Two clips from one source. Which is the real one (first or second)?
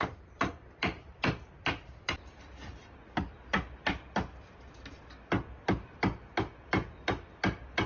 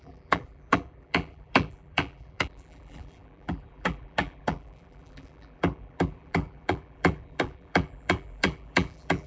first